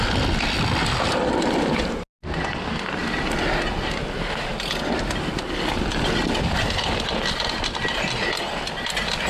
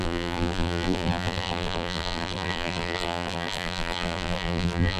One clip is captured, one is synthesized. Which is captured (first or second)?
first